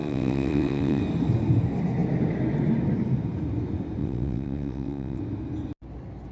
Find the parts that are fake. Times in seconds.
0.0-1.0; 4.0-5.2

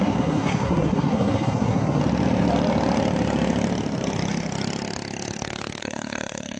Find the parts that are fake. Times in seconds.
0.0-2.0; 5.8-6.6

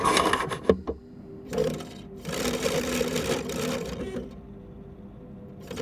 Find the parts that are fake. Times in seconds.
1.0-4.5